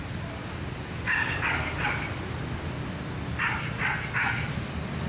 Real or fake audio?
real